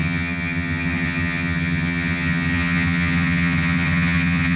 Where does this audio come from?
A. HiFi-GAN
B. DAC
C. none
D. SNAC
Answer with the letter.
A